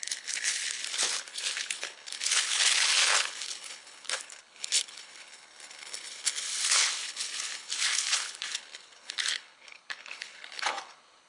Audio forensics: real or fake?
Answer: fake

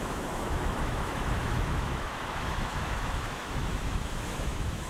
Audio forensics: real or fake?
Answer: fake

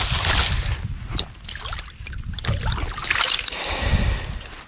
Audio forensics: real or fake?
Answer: real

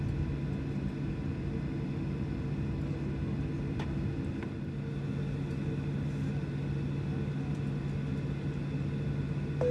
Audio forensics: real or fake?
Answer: real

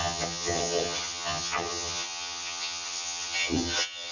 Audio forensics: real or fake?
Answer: fake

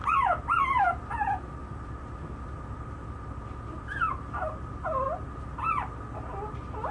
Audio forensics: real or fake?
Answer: real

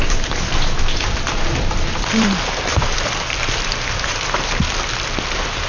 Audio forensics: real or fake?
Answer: fake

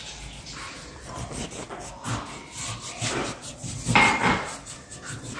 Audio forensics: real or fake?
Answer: real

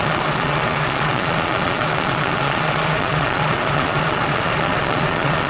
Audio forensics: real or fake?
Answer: fake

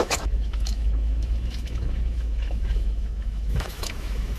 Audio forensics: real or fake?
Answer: fake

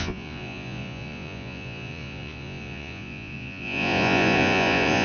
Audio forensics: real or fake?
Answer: fake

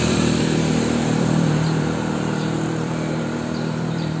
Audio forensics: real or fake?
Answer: fake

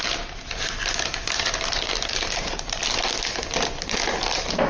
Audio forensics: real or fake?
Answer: real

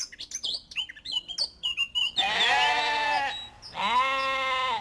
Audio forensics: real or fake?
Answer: real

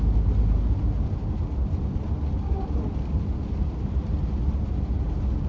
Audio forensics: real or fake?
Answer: real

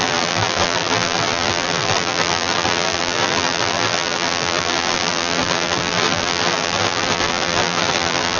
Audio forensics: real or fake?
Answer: fake